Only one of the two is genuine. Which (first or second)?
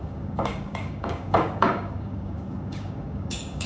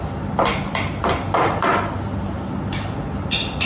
second